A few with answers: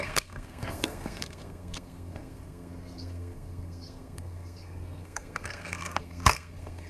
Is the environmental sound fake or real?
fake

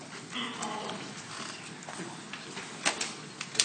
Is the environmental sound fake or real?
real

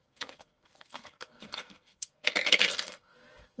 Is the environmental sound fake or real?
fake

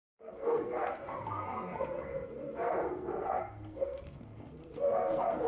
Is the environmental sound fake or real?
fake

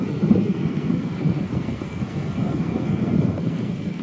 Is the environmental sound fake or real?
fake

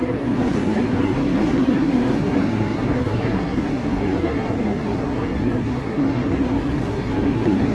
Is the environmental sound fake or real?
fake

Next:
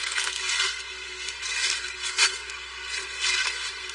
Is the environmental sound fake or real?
fake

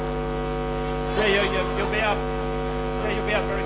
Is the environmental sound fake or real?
real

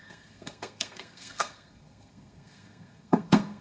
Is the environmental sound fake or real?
fake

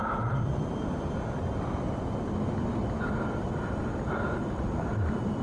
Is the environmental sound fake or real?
real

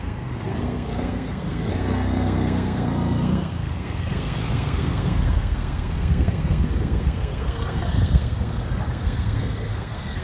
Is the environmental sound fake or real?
fake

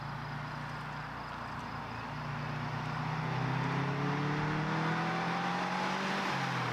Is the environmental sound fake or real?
real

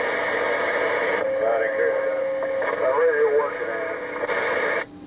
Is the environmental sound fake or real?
real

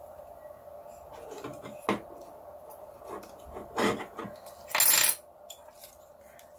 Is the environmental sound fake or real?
real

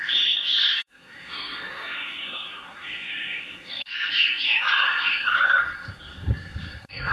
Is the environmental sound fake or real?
fake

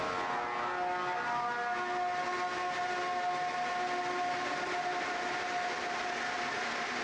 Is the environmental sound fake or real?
real